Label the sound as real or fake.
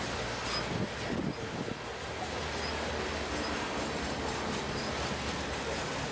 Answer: real